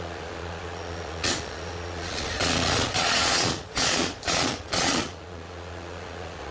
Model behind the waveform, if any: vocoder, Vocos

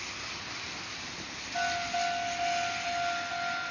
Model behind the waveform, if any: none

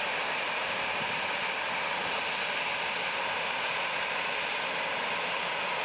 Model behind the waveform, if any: none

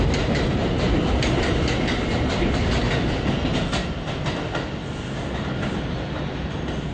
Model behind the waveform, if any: none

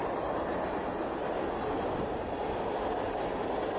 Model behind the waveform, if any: none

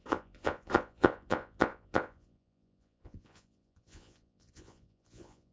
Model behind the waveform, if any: vocoder, Vocos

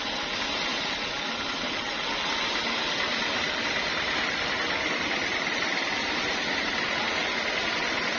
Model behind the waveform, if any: none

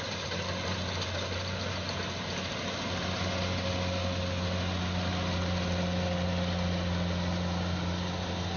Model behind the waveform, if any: none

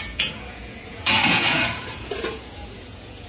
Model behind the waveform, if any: vocoder, Vocos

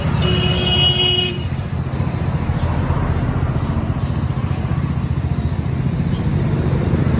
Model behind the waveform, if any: none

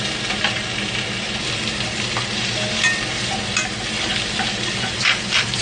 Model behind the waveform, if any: none